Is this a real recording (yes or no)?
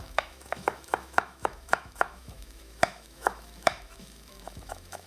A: no